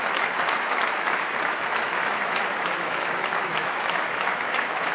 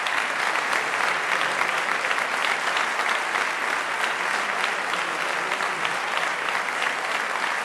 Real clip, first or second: second